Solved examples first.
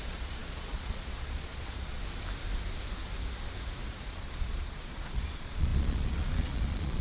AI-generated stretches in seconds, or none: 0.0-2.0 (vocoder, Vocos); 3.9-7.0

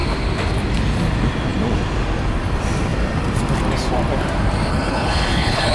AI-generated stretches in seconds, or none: 4.7-5.7 (codec, HILCodec)

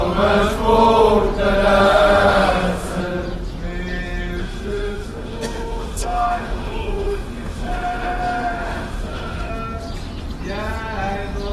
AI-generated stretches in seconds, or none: 1.8-3.0 (autoencoder, DAC-VAE); 4.4-9.5

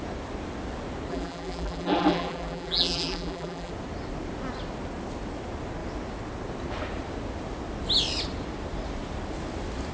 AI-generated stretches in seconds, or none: 1.1-3.7 (vocoder, BigVGAN v2)

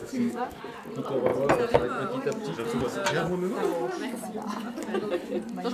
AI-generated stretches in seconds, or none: 0.0-0.6 (autoencoder, DAC-VAE)

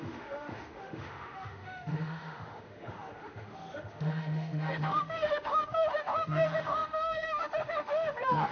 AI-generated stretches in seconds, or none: 0.0-8.5 (autoencoder, DAC-VAE)